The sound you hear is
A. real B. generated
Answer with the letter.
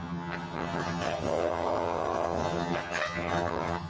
B